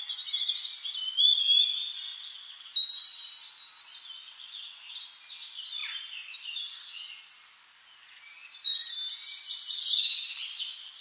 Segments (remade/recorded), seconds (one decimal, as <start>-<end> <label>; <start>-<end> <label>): 0.0-11.0 recorded